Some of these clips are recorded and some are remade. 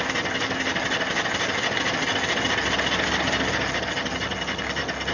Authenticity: recorded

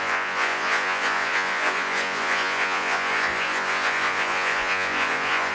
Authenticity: remade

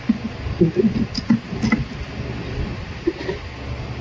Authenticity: recorded